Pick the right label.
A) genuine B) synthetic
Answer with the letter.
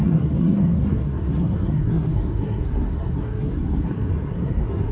B